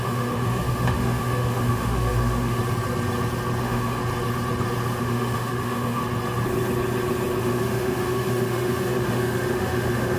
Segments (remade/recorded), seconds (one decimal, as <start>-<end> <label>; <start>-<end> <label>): 0.0-2.6 remade; 2.6-3.6 recorded; 3.6-4.0 remade; 4.0-5.0 recorded; 5.0-6.0 remade; 6.0-7.4 recorded; 7.4-10.2 remade